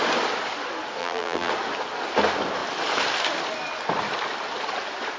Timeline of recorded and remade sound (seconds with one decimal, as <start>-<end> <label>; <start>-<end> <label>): 0.0-1.0 recorded; 1.0-1.5 remade; 1.5-5.2 recorded